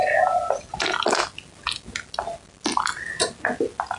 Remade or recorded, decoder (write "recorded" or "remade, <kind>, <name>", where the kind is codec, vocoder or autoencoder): recorded